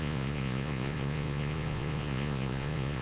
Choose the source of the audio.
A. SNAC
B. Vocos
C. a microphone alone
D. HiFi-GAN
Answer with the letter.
B